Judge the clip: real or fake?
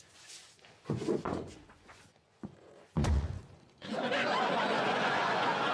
fake